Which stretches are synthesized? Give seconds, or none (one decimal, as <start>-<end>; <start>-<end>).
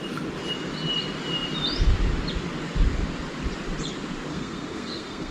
4.3-5.3